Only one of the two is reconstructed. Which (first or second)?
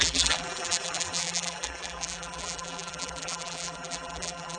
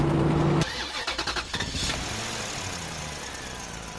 first